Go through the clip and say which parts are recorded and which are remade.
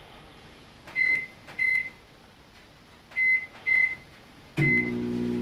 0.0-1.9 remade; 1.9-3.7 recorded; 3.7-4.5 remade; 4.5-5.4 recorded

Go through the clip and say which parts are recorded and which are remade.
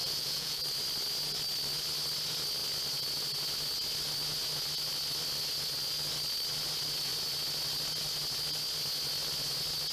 0.0-0.6 remade; 0.6-9.9 recorded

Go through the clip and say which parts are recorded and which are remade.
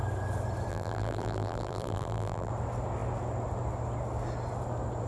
0.0-0.7 recorded; 0.7-2.5 remade; 2.5-5.1 recorded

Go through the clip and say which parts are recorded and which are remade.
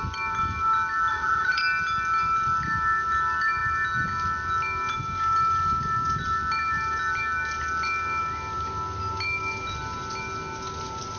0.0-1.1 recorded; 1.1-1.6 remade; 1.6-11.2 recorded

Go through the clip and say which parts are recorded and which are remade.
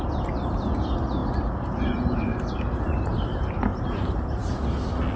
0.0-2.3 recorded; 2.3-3.0 remade; 3.0-3.7 recorded; 3.7-4.5 remade; 4.5-5.2 recorded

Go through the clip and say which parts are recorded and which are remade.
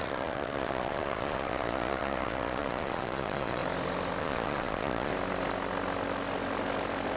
0.0-3.6 remade; 3.6-4.2 recorded; 4.2-5.1 remade; 5.1-7.2 recorded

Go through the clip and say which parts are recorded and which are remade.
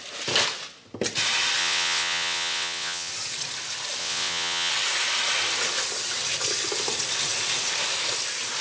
0.0-1.6 recorded; 1.6-3.1 remade; 3.1-4.0 recorded; 4.0-4.7 remade; 4.7-8.6 recorded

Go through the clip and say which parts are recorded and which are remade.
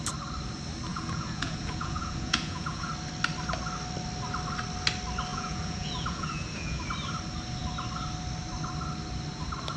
0.0-0.9 recorded; 0.9-2.9 remade; 2.9-5.3 recorded; 5.3-6.8 remade; 6.8-9.8 recorded